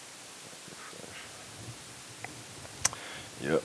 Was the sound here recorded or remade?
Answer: recorded